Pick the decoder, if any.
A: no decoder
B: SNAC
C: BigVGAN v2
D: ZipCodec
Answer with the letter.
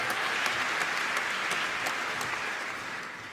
A